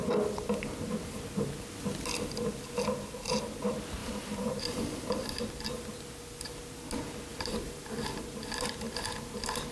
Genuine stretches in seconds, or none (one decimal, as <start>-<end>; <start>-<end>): 0.0-4.0; 4.6-7.3; 8.2-9.7